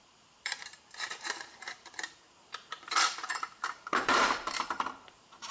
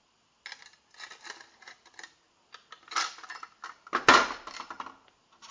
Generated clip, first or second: first